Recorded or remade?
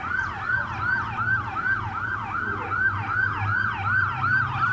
recorded